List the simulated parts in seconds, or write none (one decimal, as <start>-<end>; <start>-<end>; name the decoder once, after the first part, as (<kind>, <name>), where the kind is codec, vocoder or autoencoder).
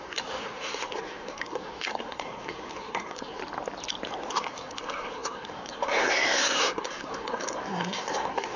0.0-3.4 (codec, SNAC); 4.3-8.6